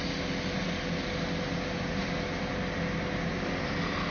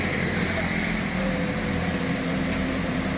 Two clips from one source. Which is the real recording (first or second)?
first